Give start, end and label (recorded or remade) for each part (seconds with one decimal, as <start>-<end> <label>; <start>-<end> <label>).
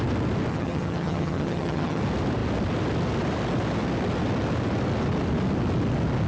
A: 0.0-0.5 recorded; 0.5-2.0 remade; 2.0-6.3 recorded